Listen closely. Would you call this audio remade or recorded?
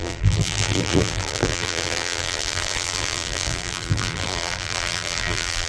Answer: remade